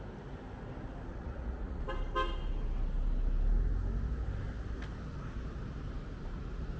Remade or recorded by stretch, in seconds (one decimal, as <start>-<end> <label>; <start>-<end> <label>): 0.0-1.1 recorded; 1.1-1.8 remade; 1.8-6.8 recorded